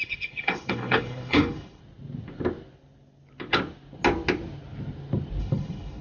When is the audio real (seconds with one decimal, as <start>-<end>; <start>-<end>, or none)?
1.8-5.4